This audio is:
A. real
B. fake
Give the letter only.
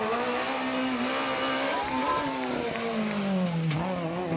A